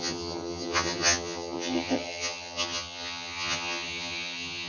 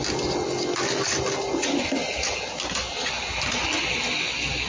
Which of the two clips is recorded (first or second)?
second